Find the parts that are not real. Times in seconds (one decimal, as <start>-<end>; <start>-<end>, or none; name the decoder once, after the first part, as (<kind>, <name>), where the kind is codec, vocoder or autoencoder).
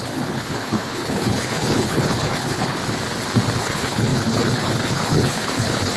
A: 0.0-2.8 (codec, HILCodec); 3.6-6.0